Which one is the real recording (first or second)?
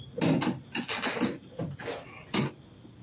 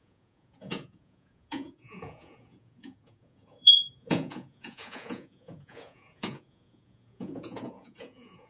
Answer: first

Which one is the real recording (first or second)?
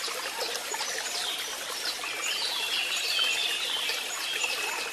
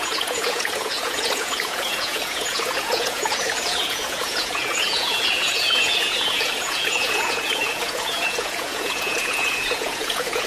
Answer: first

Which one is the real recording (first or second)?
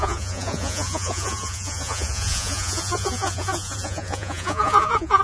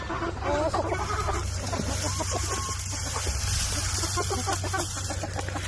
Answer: second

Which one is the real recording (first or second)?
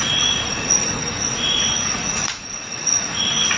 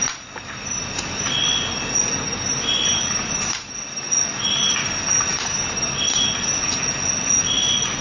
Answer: second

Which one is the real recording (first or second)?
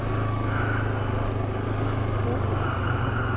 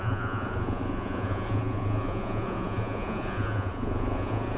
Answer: first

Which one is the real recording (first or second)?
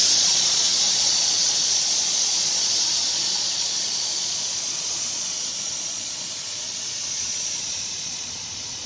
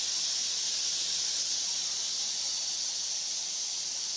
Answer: second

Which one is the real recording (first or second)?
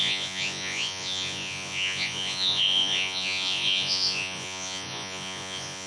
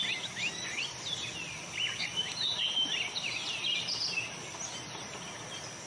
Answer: second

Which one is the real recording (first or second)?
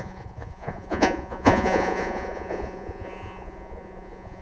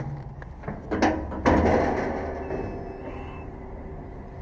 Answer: second